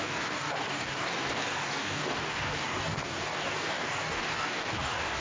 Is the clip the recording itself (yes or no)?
no